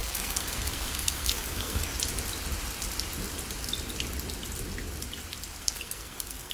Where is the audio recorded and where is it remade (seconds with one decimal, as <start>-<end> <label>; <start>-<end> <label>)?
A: 0.0-1.9 remade; 1.9-5.6 recorded; 5.6-6.5 remade